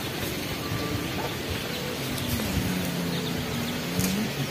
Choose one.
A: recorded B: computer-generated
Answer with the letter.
A